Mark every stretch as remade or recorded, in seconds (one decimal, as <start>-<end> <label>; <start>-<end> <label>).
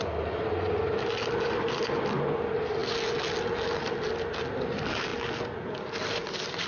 0.0-6.7 recorded